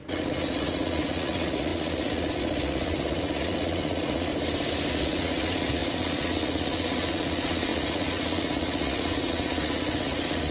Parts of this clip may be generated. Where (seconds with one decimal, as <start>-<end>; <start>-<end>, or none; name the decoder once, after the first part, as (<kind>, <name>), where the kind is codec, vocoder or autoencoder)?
0.0-4.3 (vocoder, Vocos); 4.9-10.5